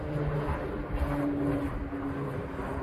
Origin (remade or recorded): recorded